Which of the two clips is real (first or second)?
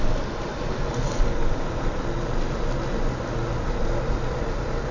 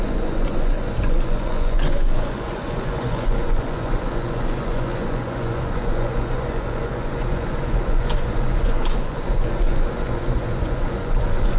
first